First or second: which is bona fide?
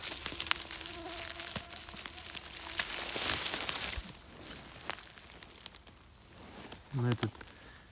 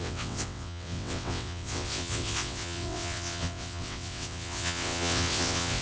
first